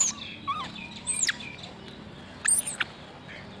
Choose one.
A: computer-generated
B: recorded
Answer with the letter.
B